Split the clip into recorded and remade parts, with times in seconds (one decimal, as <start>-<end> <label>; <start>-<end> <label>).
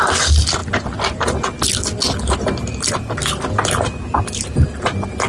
0.0-5.3 recorded